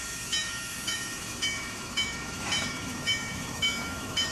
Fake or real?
fake